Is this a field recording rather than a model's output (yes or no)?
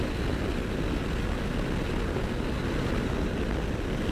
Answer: yes